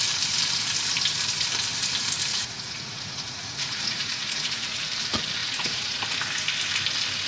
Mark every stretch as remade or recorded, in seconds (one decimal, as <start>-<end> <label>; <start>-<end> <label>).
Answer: 0.0-2.3 recorded; 2.3-4.8 remade; 4.8-5.4 recorded; 5.4-6.0 remade; 6.0-7.3 recorded